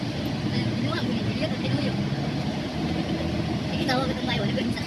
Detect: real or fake real